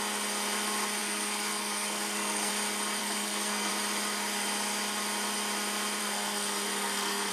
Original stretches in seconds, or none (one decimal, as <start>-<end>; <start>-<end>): 0.0-1.0; 2.5-3.0; 3.7-6.0